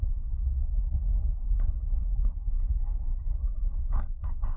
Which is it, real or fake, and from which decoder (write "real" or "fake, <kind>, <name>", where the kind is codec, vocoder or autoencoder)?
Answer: fake, codec, SNAC